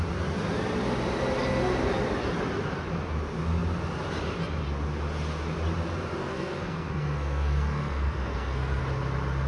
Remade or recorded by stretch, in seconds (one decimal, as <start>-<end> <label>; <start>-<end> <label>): 0.0-6.2 recorded; 6.2-8.8 remade; 8.8-9.5 recorded

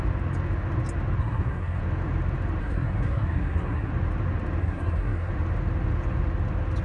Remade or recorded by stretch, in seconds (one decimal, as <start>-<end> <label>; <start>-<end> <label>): 0.0-1.2 recorded; 1.2-1.8 remade; 1.8-2.6 recorded; 2.6-3.9 remade; 3.9-4.6 recorded; 4.6-5.3 remade; 5.3-6.8 recorded